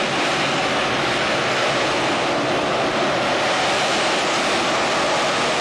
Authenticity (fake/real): real